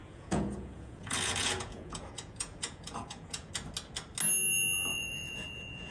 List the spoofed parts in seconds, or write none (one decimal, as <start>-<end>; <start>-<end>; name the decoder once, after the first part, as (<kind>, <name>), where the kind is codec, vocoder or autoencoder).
0.0-3.5 (vocoder, Vocos); 4.9-5.9

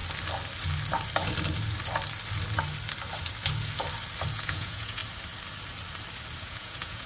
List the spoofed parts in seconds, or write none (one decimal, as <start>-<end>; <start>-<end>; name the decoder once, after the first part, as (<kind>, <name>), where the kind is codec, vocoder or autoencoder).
4.3-5.0 (vocoder, Vocos); 6.4-7.1

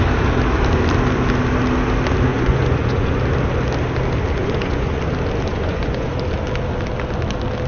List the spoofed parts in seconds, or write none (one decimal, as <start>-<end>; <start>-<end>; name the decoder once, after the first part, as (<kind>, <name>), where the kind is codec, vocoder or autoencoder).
2.3-3.2 (vocoder, Vocos); 4.4-5.0; 5.5-6.1